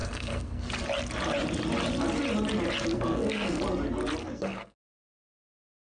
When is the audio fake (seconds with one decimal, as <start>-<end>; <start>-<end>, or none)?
0.0-0.7; 2.9-3.6; 4.2-4.8